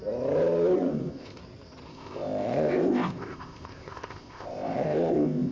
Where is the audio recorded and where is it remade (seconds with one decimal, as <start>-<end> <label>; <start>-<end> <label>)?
0.0-0.9 recorded; 0.9-1.4 remade; 1.4-1.9 recorded; 1.9-5.5 remade